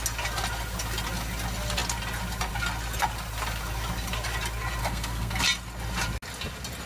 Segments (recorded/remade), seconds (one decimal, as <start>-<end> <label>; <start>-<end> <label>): 0.0-4.8 recorded; 4.8-5.4 remade; 5.4-6.9 recorded